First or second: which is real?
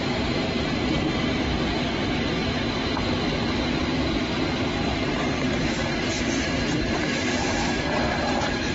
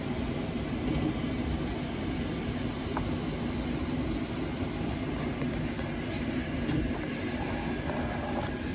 second